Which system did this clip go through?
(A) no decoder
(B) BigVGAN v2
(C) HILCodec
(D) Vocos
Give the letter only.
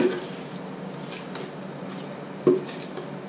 A